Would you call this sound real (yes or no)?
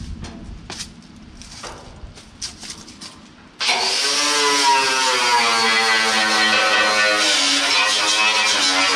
yes